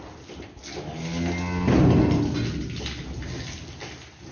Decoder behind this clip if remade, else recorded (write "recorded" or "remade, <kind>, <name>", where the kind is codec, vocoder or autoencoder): recorded